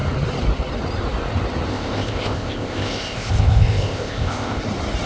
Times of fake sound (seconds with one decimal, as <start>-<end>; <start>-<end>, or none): 1.7-4.6